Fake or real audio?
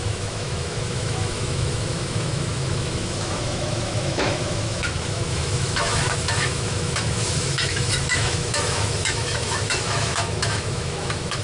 fake